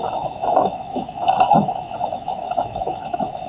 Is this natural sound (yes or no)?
no